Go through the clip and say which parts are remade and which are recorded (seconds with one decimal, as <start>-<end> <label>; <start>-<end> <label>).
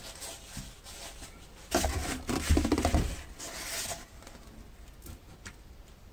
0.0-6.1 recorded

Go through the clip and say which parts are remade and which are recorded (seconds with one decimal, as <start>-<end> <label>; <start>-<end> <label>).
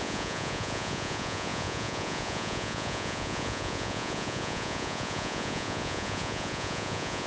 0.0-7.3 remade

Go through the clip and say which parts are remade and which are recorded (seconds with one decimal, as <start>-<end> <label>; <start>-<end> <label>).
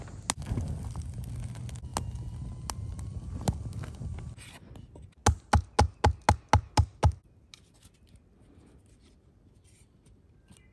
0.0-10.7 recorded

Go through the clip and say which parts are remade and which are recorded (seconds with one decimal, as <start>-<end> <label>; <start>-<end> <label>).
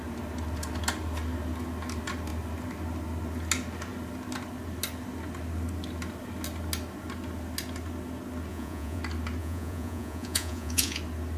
0.0-8.5 recorded; 8.5-9.0 remade; 9.0-9.4 recorded; 9.4-11.0 remade; 11.0-11.4 recorded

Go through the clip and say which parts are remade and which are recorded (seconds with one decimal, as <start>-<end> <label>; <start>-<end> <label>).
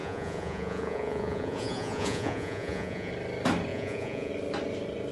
0.0-3.1 remade; 3.1-3.7 recorded; 3.7-4.3 remade; 4.3-5.1 recorded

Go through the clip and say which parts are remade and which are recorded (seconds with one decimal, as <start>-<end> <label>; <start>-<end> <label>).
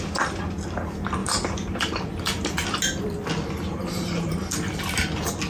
0.0-1.2 recorded; 1.2-1.8 remade; 1.8-3.7 recorded; 3.7-4.8 remade; 4.8-5.5 recorded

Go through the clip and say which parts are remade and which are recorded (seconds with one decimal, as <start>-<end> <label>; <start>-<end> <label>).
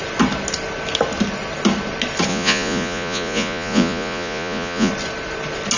0.0-2.3 recorded; 2.3-4.9 remade; 4.9-5.8 recorded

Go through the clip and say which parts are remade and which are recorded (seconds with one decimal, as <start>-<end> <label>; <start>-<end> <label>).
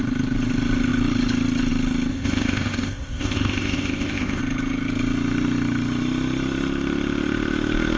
0.0-2.1 recorded; 2.1-4.4 remade; 4.4-8.0 recorded